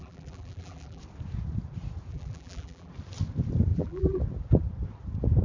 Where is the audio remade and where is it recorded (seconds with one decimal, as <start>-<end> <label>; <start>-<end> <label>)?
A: 0.0-1.0 remade; 1.0-2.1 recorded; 2.1-2.9 remade; 2.9-3.7 recorded; 3.7-4.2 remade; 4.2-5.4 recorded